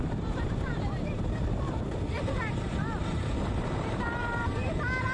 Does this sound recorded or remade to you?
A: remade